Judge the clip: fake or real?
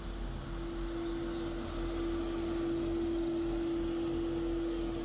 real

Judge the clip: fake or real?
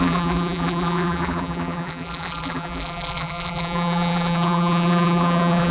fake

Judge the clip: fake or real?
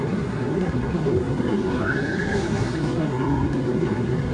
fake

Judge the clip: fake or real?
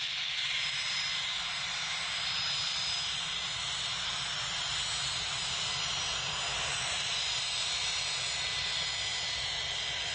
real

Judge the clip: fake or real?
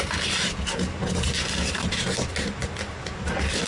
real